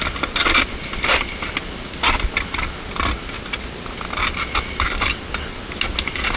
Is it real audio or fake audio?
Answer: real